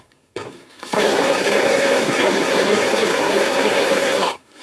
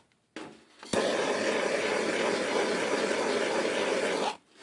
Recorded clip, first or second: second